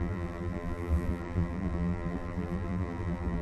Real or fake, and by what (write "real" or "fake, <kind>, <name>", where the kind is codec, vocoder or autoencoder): fake, vocoder, BigVGAN v2